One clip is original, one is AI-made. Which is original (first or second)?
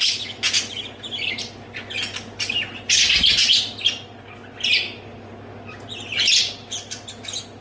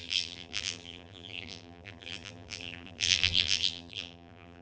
first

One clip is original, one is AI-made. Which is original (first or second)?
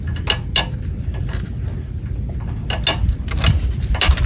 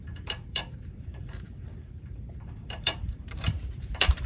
first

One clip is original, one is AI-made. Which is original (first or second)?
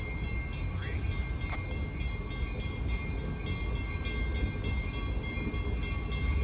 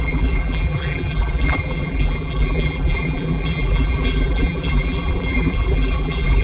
first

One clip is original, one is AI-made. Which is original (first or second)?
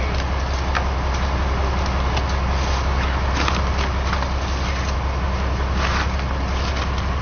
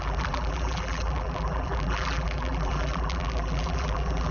first